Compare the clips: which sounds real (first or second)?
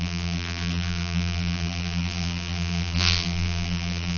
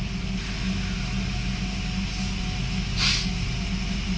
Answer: second